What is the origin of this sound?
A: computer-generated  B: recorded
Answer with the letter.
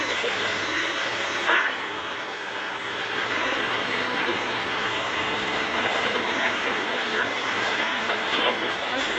A